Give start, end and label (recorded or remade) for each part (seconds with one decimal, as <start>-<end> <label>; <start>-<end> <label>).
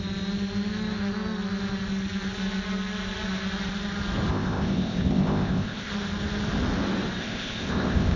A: 0.0-4.3 recorded; 4.3-5.9 remade; 5.9-7.2 recorded; 7.2-8.2 remade